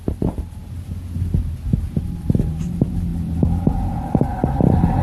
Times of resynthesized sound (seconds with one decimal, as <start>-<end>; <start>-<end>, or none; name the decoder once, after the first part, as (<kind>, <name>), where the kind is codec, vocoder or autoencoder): 0.0-0.6 (vocoder, BigVGAN v2); 2.0-3.1; 3.7-5.0